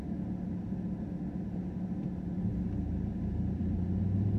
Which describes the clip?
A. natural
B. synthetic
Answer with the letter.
A